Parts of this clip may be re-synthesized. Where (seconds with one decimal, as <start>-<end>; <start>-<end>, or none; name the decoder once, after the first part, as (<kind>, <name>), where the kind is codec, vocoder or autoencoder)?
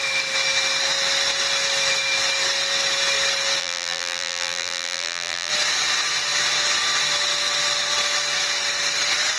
3.6-5.5 (vocoder, BigVGAN v2)